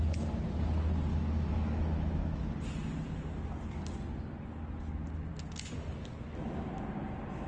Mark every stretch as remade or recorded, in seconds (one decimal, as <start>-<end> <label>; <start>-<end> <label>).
0.0-1.1 recorded; 1.1-2.4 remade; 2.4-7.5 recorded